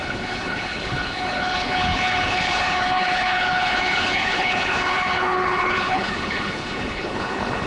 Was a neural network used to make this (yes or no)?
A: yes